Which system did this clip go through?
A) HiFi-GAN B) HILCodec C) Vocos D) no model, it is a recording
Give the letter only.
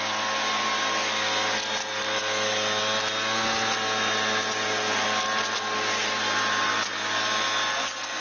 D